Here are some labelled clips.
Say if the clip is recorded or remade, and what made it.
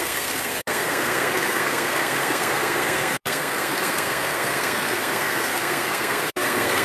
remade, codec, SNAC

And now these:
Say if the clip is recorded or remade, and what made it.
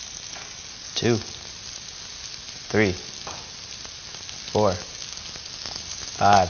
recorded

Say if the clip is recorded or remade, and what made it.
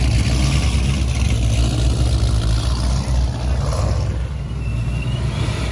recorded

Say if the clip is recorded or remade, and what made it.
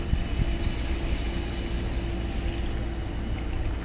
recorded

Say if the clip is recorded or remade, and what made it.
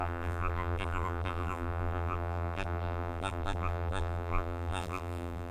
remade, vocoder, BigVGAN v2